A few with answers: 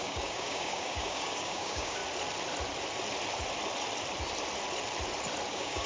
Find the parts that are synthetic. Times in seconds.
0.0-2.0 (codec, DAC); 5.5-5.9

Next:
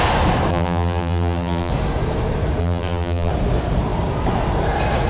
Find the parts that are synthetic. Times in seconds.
0.5-1.7 (vocoder, BigVGAN v2); 2.6-3.3

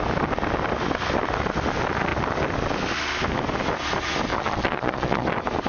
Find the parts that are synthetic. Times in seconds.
4.3-5.3 (vocoder, Vocos)

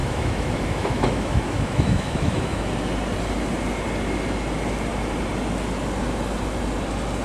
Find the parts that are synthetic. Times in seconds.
0.0-2.7 (autoencoder, DAC-VAE)

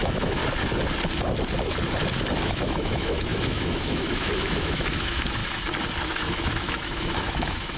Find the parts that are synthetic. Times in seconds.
0.0-0.4 (autoencoder, DAC-VAE); 2.4-5.4; 6.0-7.8

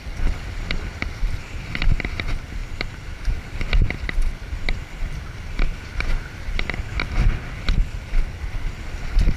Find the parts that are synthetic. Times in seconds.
2.6-3.3 (vocoder, BigVGAN v2)

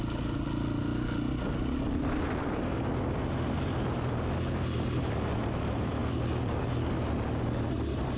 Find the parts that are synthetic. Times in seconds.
none

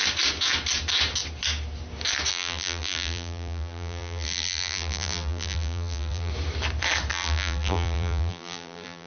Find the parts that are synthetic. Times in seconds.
2.3-6.3 (vocoder, BigVGAN v2); 7.1-9.1